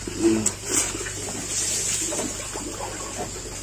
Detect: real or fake real